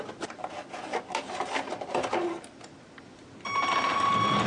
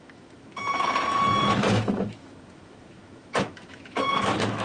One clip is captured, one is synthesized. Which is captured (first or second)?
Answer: first